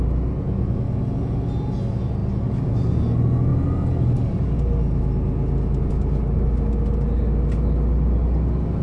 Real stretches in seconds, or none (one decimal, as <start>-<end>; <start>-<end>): 0.0-8.8